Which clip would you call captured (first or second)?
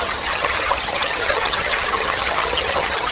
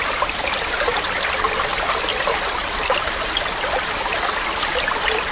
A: second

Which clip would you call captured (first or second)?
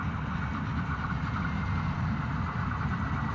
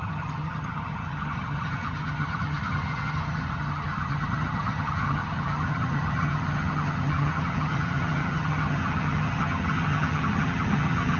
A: first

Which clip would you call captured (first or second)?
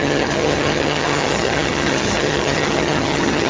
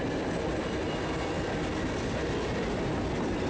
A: second